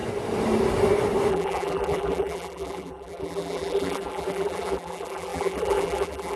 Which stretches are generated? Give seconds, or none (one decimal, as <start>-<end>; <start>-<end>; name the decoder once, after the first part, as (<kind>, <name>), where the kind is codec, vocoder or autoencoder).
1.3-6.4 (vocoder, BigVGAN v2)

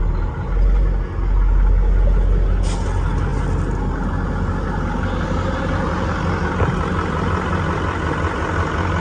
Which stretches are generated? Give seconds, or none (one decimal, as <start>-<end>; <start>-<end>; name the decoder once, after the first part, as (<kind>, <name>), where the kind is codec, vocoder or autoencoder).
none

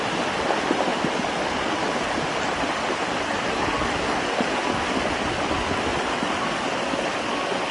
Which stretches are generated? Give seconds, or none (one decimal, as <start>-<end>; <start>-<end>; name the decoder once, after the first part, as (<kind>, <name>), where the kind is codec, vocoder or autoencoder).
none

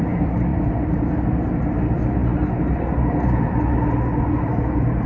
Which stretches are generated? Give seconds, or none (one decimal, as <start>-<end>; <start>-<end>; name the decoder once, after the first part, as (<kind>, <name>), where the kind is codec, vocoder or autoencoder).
0.0-2.2 (vocoder, BigVGAN v2); 4.2-5.1

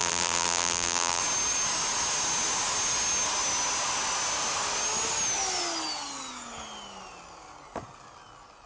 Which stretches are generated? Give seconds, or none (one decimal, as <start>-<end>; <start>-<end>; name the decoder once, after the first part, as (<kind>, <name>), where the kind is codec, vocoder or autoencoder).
0.0-1.2 (vocoder, BigVGAN v2)